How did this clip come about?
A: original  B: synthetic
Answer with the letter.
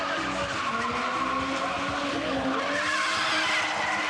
A